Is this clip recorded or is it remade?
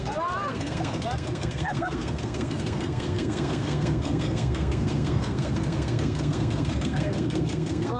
remade